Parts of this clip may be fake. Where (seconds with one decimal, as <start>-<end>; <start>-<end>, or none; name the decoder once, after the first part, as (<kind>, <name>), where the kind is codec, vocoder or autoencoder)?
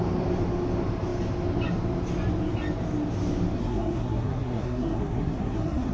3.6-5.9 (codec, SNAC)